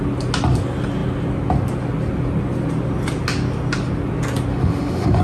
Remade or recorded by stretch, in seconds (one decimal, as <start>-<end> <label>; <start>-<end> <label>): 0.0-4.5 recorded; 4.5-5.2 remade